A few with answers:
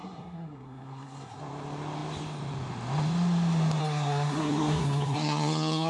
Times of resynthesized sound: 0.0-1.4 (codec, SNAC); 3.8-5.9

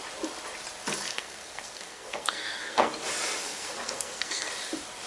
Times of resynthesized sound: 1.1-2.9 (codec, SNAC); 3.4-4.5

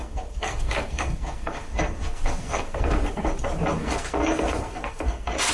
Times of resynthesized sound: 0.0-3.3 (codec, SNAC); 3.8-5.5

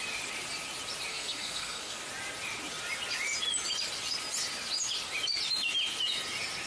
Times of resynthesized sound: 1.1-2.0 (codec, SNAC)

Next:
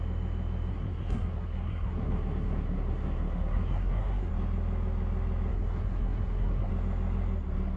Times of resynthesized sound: 0.7-4.3 (codec, SNAC); 5.5-6.7